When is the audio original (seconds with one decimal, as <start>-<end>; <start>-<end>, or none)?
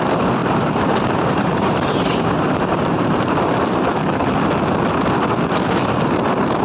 0.0-0.4; 3.4-6.6